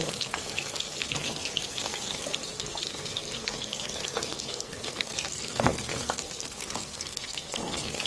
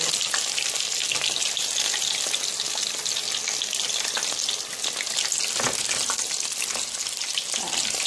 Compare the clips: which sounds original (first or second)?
second